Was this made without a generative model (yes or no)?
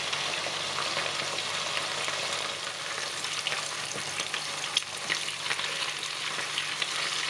yes